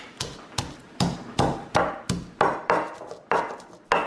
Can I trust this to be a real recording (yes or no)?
yes